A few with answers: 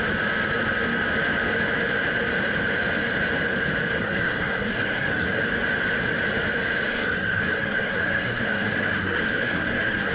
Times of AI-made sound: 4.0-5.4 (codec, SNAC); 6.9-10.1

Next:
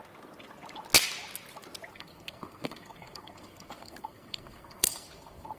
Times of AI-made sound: 1.9-5.6 (codec, SNAC)

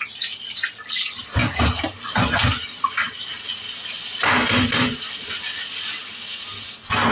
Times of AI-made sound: none

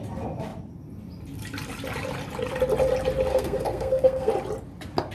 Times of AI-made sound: 3.3-4.3 (codec, SNAC)

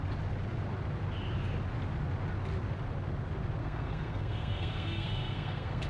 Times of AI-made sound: 3.6-5.9 (codec, SNAC)

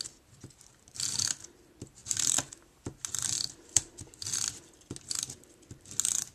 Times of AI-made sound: none

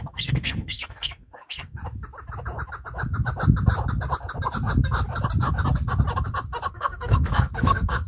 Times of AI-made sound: 0.0-1.8 (codec, SNAC); 6.7-8.1